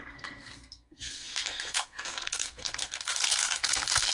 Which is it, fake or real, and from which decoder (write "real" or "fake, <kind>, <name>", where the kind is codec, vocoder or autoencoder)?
fake, codec, SNAC